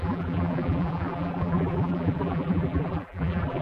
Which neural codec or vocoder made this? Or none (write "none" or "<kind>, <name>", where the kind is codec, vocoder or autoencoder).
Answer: vocoder, BigVGAN v2